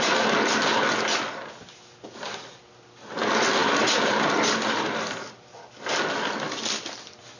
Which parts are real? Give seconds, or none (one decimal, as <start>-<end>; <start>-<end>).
0.0-7.4